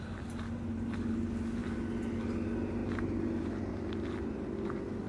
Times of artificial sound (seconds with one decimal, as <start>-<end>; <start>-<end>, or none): none